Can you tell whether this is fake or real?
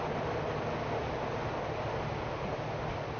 real